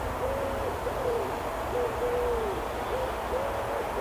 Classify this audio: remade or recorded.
recorded